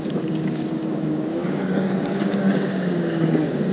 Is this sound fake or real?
fake